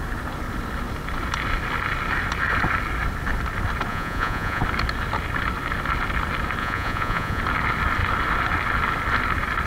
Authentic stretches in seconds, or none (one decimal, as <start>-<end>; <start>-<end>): 0.0-3.9; 4.6-6.6; 7.4-9.7